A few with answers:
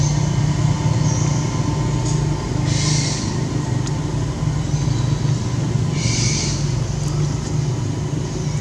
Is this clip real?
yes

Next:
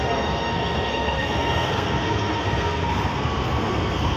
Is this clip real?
no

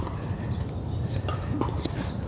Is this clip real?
yes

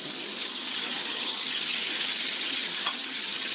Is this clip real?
no